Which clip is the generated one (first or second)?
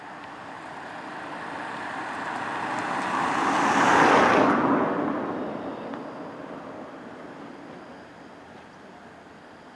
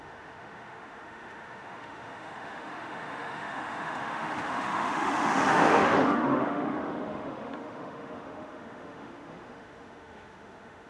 second